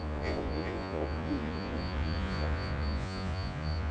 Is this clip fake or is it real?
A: fake